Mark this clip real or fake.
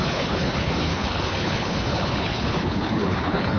fake